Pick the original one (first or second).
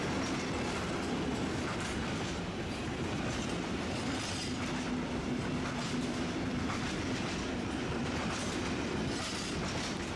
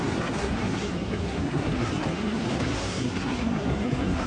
first